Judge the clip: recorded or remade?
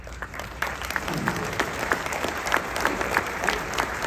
remade